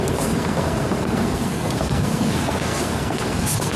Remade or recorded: remade